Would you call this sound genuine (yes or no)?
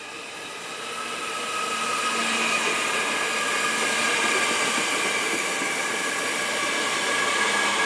yes